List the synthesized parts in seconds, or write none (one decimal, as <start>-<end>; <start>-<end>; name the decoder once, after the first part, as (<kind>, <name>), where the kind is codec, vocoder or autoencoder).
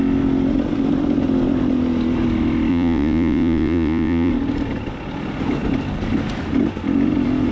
2.7-4.3 (vocoder, Vocos)